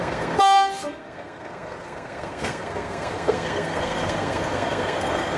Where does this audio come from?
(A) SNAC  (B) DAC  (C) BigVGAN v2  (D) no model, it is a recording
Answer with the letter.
A